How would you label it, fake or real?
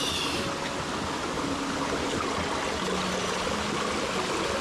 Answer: real